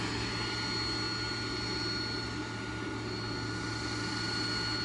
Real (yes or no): yes